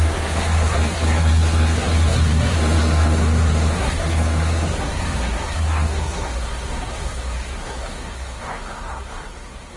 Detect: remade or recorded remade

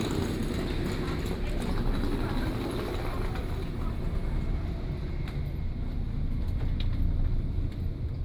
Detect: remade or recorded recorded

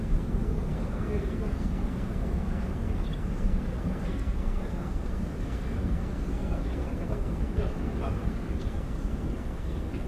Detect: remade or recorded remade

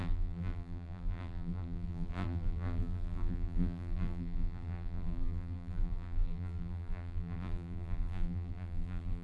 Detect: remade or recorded remade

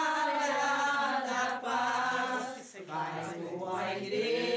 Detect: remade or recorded recorded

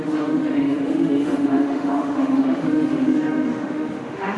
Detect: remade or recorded remade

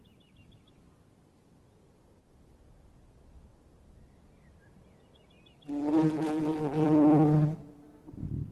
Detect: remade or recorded recorded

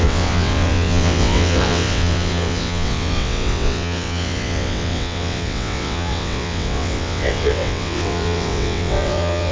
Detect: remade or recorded remade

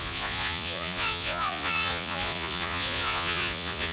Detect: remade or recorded remade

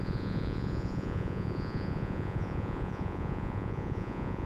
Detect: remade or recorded remade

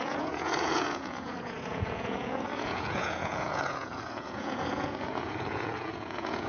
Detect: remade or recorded remade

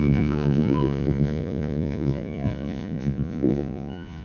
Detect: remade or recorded remade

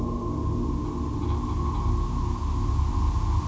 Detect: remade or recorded recorded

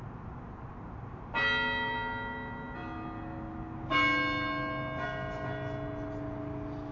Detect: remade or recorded recorded